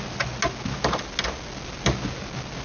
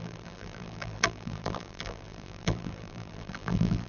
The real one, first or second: first